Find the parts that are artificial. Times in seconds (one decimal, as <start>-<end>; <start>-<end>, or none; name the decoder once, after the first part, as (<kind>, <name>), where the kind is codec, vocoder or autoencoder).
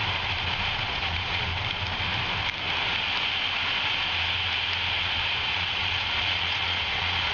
0.9-1.5 (vocoder, Vocos); 4.9-7.3